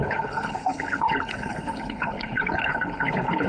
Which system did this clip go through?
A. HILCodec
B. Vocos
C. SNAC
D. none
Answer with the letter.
A